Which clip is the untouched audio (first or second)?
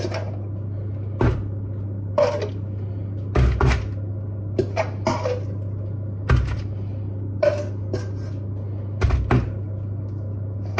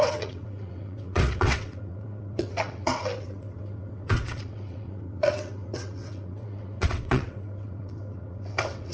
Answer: first